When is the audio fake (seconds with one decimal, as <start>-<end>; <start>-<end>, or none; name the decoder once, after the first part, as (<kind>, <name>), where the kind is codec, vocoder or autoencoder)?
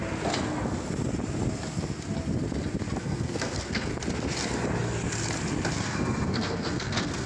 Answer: 3.0-3.9 (codec, SNAC); 5.8-7.3